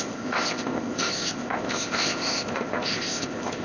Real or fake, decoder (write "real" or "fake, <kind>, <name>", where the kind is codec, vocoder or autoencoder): fake, codec, ZipCodec